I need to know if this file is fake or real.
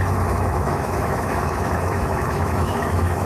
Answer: fake